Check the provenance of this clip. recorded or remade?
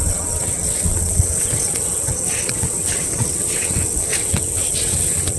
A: remade